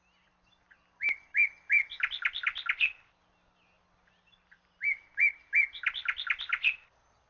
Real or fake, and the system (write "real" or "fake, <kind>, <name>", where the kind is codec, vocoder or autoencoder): real